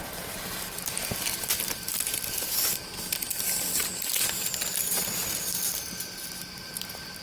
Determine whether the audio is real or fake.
real